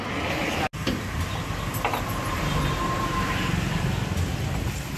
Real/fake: real